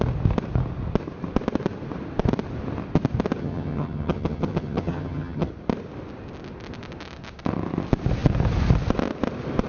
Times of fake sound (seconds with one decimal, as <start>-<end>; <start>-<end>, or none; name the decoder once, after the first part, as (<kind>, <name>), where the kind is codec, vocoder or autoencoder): 3.4-5.5 (vocoder, HiFi-GAN)